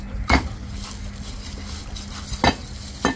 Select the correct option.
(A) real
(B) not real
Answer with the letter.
A